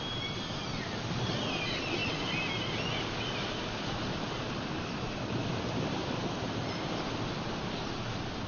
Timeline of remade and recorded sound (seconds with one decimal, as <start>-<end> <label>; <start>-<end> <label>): 0.0-8.5 remade